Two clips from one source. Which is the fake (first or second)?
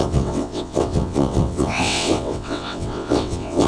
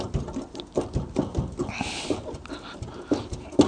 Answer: first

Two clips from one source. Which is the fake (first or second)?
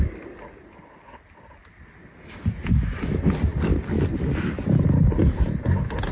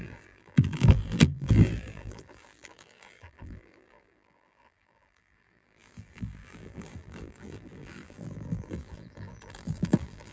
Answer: second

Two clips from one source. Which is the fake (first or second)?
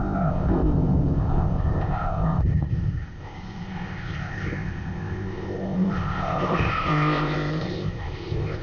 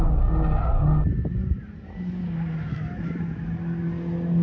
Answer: first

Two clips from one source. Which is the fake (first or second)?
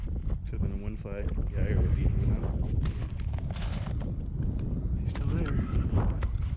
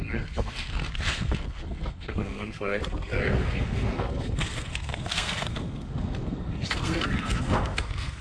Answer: second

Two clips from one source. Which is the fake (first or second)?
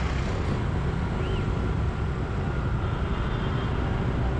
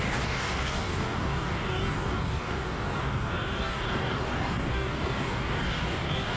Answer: second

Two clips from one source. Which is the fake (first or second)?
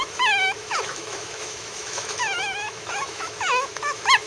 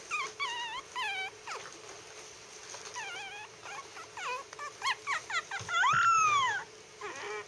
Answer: first